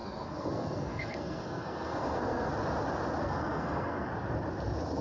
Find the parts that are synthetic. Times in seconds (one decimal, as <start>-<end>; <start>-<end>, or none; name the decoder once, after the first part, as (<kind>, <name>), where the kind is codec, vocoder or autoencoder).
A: 0.0-2.5 (codec, SNAC); 3.2-4.1